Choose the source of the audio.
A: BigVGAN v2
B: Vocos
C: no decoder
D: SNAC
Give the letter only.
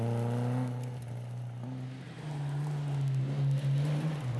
C